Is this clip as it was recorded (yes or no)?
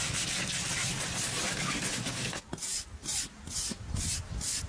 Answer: yes